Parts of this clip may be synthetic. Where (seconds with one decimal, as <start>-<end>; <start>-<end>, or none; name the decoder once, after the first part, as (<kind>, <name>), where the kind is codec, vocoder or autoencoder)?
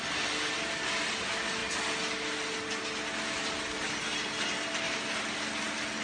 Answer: none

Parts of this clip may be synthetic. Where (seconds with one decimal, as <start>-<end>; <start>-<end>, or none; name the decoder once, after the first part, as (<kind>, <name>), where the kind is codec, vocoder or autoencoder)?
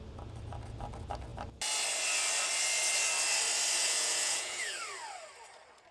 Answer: 3.8-4.8 (vocoder, Vocos)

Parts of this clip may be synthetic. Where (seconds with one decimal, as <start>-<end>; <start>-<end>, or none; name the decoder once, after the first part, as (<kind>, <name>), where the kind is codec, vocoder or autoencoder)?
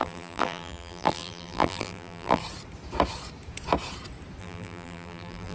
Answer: 0.0-2.4 (vocoder, BigVGAN v2); 4.4-5.5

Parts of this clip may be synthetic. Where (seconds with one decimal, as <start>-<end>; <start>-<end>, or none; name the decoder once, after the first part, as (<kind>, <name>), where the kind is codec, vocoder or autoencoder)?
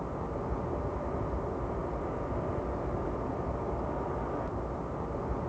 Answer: none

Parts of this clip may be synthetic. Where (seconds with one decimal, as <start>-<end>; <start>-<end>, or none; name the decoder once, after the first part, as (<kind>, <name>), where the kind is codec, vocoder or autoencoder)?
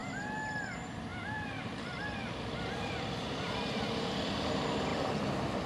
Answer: 1.1-4.1 (vocoder, BigVGAN v2); 4.9-5.7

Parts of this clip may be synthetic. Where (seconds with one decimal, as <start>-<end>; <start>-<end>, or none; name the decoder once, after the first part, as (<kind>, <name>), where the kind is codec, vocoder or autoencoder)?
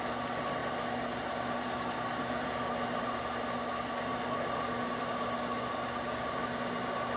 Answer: none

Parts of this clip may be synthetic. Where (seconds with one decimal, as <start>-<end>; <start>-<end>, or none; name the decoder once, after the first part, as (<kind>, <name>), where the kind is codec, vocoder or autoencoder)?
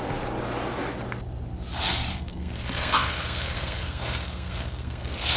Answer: 2.1-5.4 (codec, SNAC)